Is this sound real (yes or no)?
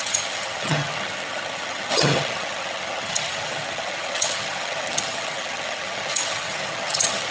no